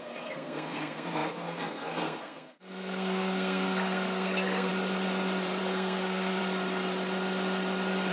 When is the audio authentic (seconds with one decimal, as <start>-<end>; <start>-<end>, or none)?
4.7-5.6; 6.4-8.1